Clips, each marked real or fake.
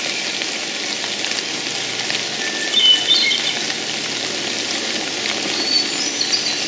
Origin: real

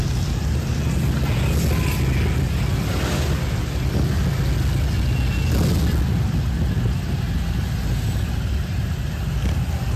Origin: real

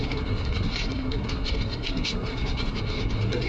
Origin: fake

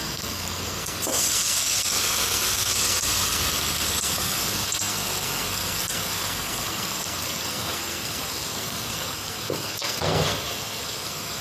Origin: fake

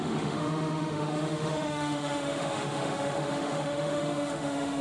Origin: fake